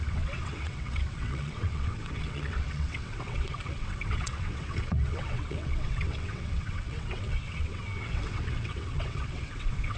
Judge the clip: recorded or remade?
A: remade